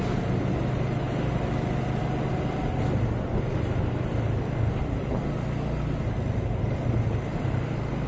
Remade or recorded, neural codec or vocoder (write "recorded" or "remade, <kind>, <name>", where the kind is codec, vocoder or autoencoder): recorded